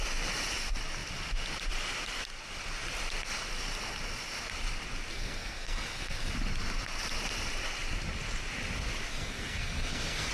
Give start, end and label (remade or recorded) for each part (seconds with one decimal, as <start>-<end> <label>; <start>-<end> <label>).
0.0-5.1 recorded; 5.1-6.3 remade; 6.3-9.1 recorded; 9.1-10.3 remade